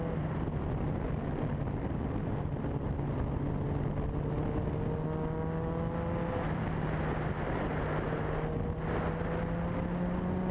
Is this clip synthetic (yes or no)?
no